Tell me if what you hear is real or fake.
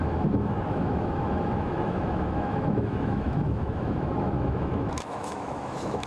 fake